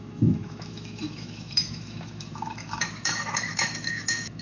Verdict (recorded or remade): remade